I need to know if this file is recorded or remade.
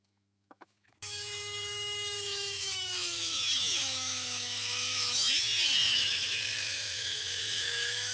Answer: remade